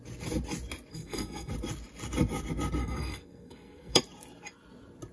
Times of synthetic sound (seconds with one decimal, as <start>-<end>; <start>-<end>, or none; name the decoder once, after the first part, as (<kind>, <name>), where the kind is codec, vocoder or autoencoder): 0.9-1.5 (codec, SNAC); 2.8-4.0

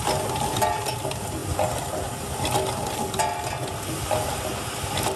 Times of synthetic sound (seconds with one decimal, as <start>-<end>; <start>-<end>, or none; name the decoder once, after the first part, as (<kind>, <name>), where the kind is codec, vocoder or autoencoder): none

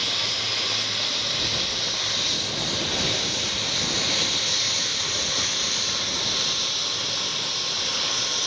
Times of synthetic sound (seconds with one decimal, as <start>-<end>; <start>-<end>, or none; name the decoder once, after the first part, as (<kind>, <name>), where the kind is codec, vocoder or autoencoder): none

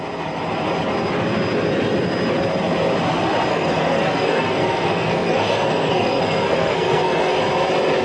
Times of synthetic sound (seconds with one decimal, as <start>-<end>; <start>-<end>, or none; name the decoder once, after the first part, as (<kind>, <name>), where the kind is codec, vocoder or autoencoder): 3.5-7.4 (codec, SNAC)

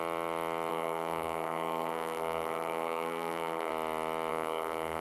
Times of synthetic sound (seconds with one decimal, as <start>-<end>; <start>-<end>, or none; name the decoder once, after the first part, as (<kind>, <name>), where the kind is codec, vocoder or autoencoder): 0.7-3.7 (codec, SNAC); 4.3-5.0

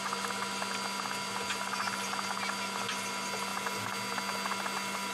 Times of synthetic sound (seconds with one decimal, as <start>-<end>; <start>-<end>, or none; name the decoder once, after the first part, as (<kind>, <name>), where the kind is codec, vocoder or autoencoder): none

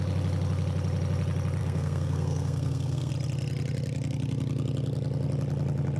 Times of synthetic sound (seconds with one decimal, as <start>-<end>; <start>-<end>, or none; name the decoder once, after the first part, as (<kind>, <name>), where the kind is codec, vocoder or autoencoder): 1.6-3.1 (codec, SNAC)

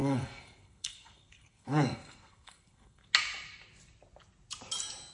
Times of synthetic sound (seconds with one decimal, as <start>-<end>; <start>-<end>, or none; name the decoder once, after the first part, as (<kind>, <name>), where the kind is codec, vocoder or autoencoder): 0.0-3.1 (codec, SNAC)